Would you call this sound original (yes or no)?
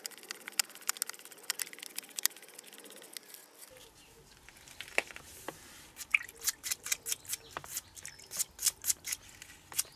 yes